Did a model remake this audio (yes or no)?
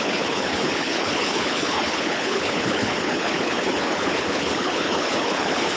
yes